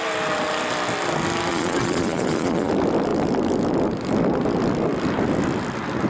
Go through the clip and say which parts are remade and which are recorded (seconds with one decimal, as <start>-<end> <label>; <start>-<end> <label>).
0.0-1.5 recorded; 1.5-2.7 remade; 2.7-6.1 recorded